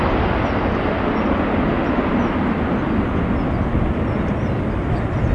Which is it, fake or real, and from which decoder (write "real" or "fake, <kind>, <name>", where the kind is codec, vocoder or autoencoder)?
real